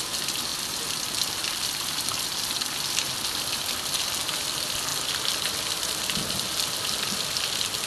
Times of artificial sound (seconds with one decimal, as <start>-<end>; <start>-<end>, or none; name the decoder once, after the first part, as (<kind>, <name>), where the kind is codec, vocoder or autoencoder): none